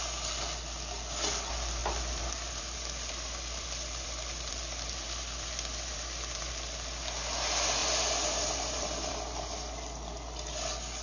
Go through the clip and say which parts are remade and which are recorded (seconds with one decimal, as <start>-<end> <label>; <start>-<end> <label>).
0.0-1.8 recorded; 1.8-6.5 remade; 6.5-7.8 recorded; 7.8-9.1 remade; 9.1-11.0 recorded